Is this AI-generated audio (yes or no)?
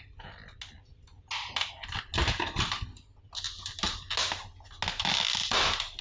no